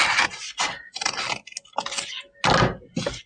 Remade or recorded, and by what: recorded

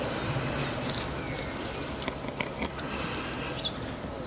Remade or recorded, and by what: recorded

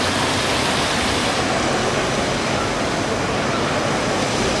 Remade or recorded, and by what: recorded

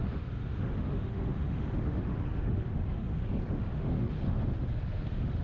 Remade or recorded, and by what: remade, autoencoder, DAC-VAE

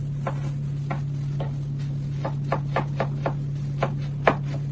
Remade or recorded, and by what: recorded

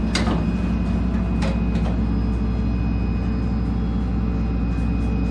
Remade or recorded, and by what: recorded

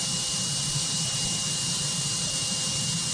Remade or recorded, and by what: remade, vocoder, BigVGAN v2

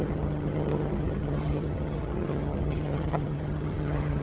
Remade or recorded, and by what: remade, vocoder, HiFi-GAN